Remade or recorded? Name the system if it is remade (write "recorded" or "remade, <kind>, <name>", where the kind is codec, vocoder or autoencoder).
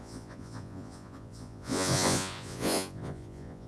remade, vocoder, Vocos